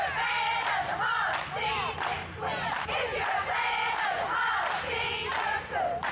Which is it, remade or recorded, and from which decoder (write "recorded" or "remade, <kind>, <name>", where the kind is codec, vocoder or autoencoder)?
recorded